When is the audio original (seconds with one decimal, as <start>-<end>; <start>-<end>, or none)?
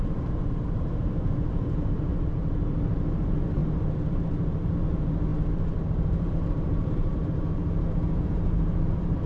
7.6-8.2